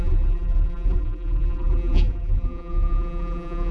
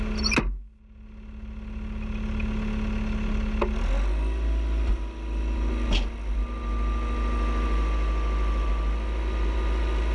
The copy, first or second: first